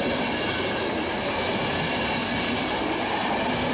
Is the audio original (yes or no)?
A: yes